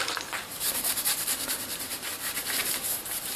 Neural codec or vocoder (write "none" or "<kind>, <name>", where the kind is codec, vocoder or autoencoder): vocoder, BigVGAN v2